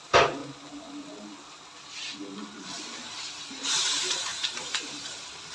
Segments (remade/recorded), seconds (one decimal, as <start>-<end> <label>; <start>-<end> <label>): 0.0-0.4 remade; 0.4-3.5 recorded; 3.5-5.5 remade